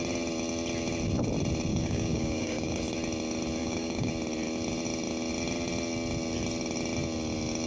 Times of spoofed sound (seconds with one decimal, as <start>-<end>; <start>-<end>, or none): 1.7-2.8; 3.6-4.1